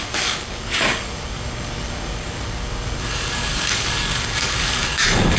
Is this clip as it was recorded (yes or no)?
no